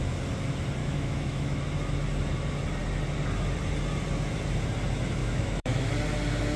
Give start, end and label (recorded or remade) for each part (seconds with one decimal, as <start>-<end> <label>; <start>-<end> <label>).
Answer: 0.0-0.8 recorded; 0.8-1.6 remade; 1.6-5.2 recorded; 5.2-5.9 remade; 5.9-6.6 recorded

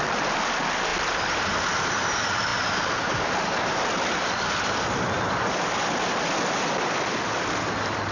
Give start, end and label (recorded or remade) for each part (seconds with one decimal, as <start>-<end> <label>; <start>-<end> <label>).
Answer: 0.0-8.1 recorded